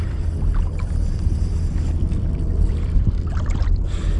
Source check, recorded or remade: remade